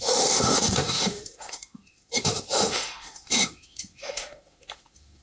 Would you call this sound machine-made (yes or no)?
yes